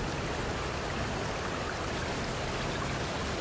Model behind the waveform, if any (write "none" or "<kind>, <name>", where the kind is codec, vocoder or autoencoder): none